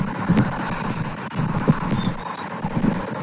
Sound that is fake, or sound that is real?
real